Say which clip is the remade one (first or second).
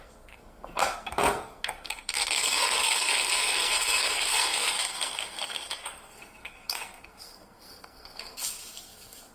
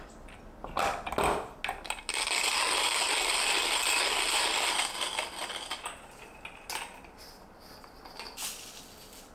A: first